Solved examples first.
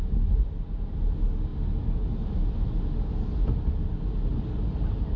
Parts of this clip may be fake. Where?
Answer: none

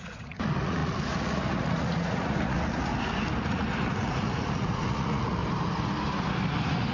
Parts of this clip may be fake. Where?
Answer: 0.0-2.9 (vocoder, Vocos); 3.4-5.4

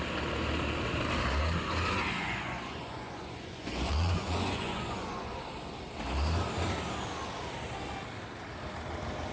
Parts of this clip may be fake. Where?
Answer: 2.2-5.3 (vocoder, Vocos)

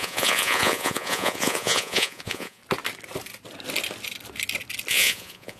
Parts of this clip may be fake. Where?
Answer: 0.0-2.6 (vocoder, Vocos); 4.9-5.6

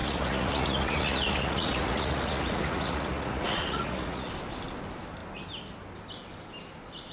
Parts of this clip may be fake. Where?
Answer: 0.0-4.3 (vocoder, Vocos)